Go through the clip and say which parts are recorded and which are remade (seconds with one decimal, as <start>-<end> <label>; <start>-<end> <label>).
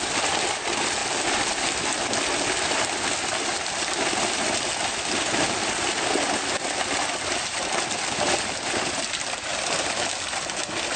0.0-11.0 recorded